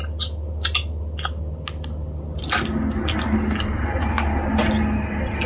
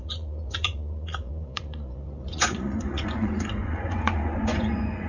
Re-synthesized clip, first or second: second